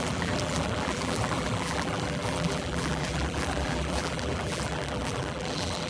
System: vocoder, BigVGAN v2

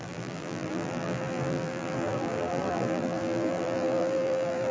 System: vocoder, BigVGAN v2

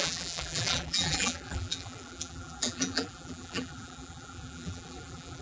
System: vocoder, BigVGAN v2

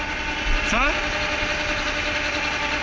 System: none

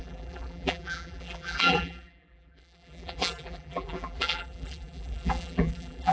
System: vocoder, BigVGAN v2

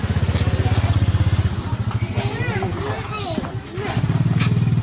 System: none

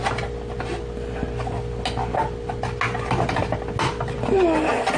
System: none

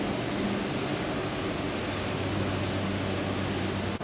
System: none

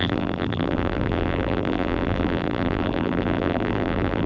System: vocoder, BigVGAN v2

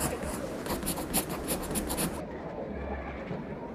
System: vocoder, BigVGAN v2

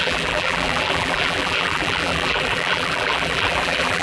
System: vocoder, BigVGAN v2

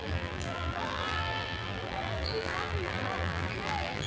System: vocoder, BigVGAN v2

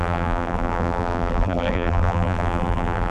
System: vocoder, BigVGAN v2